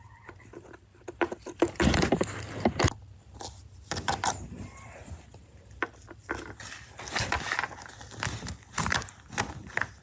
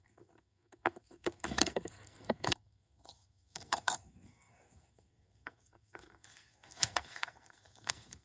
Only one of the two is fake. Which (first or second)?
second